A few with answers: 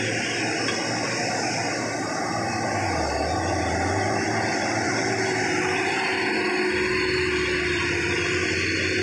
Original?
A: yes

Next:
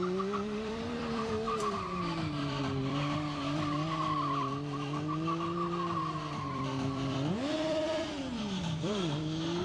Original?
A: no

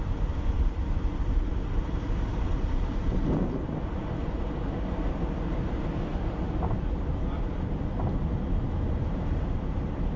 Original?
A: yes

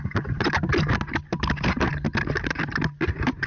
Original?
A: yes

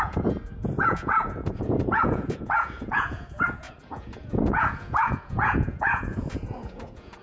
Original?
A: no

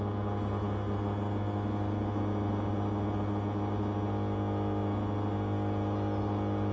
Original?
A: yes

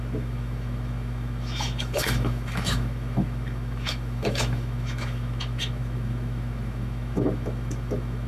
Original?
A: no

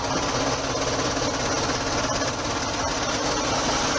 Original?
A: yes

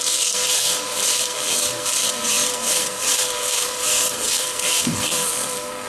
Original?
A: no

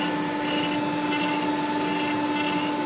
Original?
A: yes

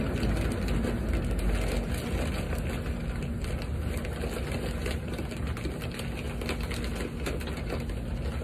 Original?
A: yes